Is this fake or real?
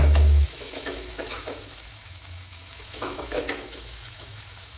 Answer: fake